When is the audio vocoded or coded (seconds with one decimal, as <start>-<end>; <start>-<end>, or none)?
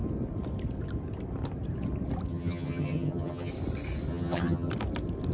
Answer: 2.3-3.5; 4.1-4.7